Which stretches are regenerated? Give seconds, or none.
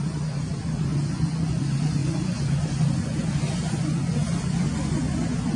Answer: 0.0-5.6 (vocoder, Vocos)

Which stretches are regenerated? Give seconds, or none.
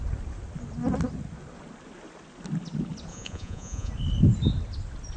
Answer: 3.1-3.9 (vocoder, Vocos)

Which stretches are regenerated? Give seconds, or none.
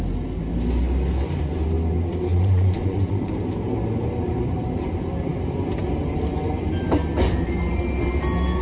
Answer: 2.3-3.3 (vocoder, Vocos)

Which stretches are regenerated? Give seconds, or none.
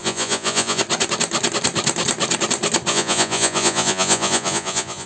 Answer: 0.0-0.8 (vocoder, Vocos); 2.9-5.1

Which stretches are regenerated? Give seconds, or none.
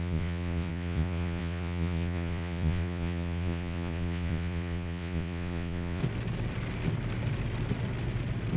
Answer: 0.0-6.0 (vocoder, Vocos)